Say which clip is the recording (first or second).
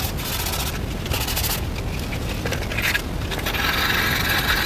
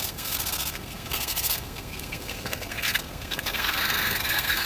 first